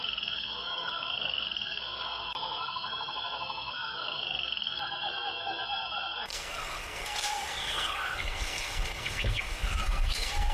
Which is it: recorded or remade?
remade